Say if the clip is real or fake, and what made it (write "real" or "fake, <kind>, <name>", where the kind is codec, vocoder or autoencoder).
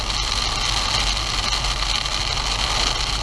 real